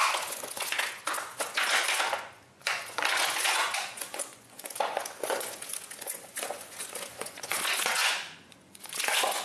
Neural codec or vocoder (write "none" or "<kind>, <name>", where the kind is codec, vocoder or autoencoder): vocoder, Vocos